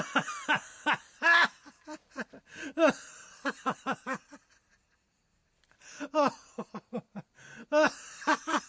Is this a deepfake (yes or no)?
no